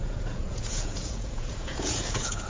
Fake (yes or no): yes